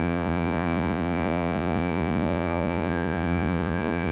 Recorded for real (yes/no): no